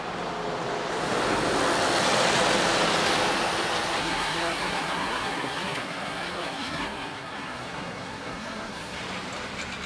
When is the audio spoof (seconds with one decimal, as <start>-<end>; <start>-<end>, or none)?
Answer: 4.0-9.0